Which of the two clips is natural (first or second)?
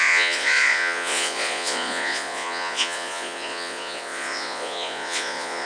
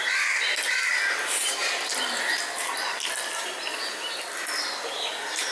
second